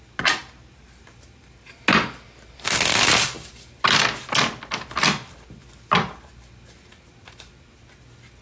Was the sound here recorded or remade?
recorded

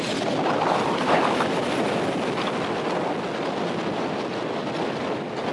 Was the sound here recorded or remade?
recorded